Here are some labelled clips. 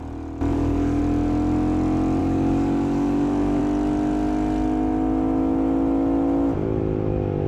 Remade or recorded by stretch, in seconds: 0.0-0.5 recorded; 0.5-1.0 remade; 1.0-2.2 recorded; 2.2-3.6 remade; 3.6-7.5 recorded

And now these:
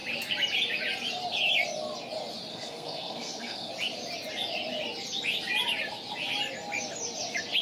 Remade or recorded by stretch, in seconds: 0.0-2.5 recorded; 2.5-3.7 remade; 3.7-7.6 recorded